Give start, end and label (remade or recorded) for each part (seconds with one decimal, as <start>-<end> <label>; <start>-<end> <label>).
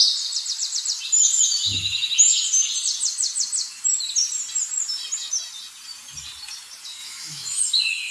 0.0-7.0 recorded; 7.0-7.6 remade; 7.6-8.1 recorded